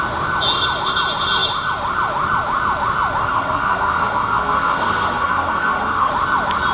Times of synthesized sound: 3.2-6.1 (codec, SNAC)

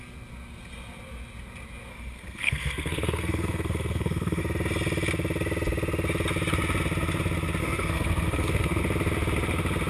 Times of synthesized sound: 1.9-4.4 (codec, SNAC); 7.6-8.8

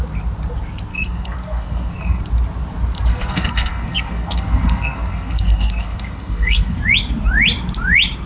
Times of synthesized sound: 0.9-2.2 (codec, SNAC); 3.1-6.8